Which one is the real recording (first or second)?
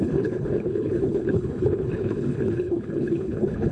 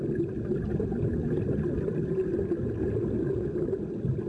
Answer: second